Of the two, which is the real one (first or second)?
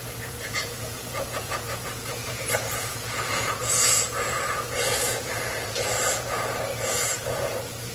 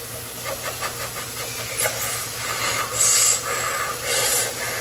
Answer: second